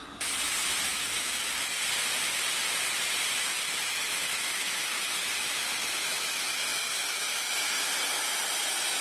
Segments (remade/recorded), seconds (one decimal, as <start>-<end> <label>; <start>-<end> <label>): 0.0-0.9 recorded; 0.9-1.8 remade; 1.8-3.5 recorded; 3.5-7.5 remade; 7.5-9.0 recorded

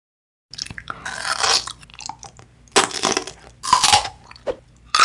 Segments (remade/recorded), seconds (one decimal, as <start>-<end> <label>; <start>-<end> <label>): 0.0-5.0 recorded

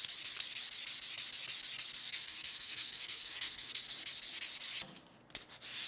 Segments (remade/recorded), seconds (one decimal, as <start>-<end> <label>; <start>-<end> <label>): 0.0-2.0 recorded; 2.0-3.8 remade; 3.8-5.9 recorded

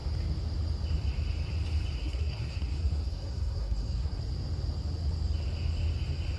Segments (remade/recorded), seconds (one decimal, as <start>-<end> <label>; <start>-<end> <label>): 0.0-2.0 recorded; 2.0-4.2 remade; 4.2-6.4 recorded

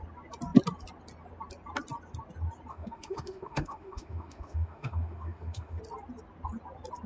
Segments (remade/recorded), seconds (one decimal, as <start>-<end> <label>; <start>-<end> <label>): 0.0-2.7 recorded; 2.7-5.8 remade; 5.8-7.1 recorded

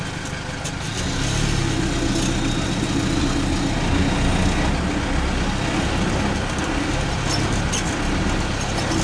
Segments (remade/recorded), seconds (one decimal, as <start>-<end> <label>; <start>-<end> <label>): 0.0-9.0 recorded

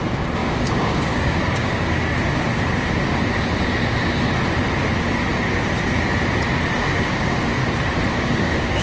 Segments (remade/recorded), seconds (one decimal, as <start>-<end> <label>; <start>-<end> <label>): 0.0-2.1 remade; 2.1-6.7 recorded; 6.7-7.6 remade; 7.6-8.1 recorded; 8.1-8.8 remade